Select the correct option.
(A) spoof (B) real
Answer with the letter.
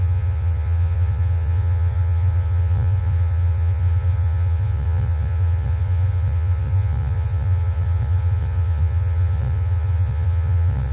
A